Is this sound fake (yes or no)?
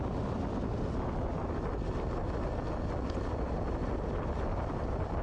no